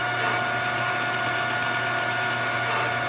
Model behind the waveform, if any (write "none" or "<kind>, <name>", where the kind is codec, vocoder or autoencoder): none